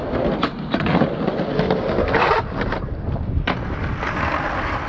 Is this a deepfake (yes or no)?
no